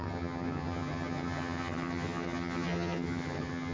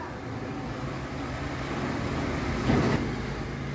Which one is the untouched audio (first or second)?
second